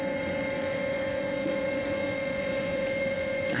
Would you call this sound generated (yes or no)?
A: yes